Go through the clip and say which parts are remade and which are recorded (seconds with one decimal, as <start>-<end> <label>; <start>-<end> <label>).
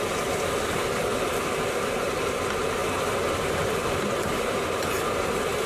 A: 0.0-5.7 recorded